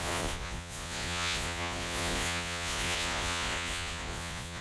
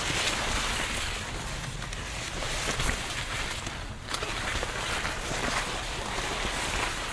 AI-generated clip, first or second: first